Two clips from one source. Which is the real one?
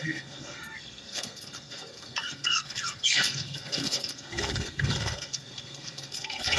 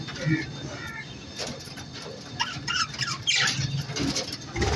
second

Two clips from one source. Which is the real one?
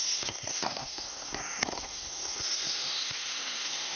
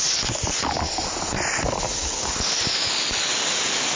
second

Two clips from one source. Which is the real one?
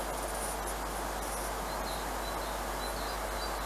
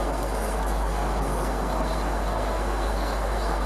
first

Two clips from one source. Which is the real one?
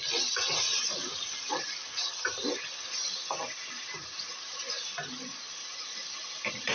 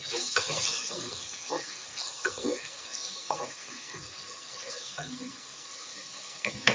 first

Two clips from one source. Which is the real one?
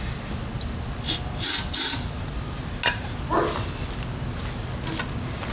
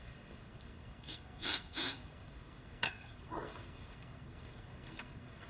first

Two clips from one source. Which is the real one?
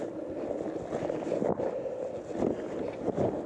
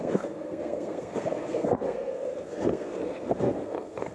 first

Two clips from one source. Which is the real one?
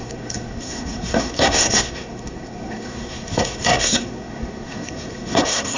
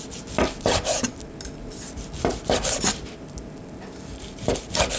second